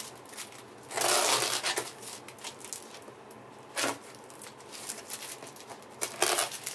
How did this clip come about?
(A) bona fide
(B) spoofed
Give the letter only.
A